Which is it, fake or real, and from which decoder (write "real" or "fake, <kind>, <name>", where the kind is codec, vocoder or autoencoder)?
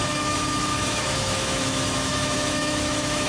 fake, autoencoder, DAC-VAE